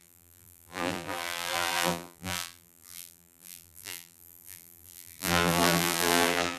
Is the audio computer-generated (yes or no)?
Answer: yes